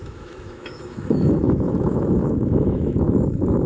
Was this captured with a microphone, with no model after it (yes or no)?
no